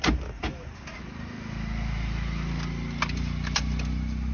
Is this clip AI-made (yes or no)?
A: no